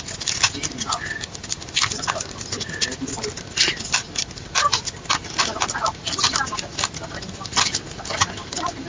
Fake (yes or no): no